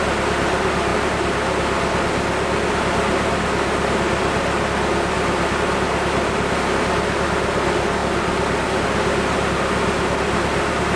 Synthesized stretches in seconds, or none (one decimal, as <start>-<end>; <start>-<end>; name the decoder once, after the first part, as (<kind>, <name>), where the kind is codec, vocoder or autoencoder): none